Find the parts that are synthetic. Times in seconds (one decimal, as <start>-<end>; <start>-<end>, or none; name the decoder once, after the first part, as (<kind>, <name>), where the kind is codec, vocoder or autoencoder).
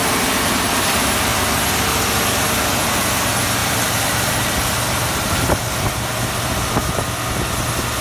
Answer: 3.6-5.9 (vocoder, BigVGAN v2)